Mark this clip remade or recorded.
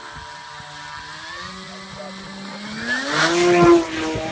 recorded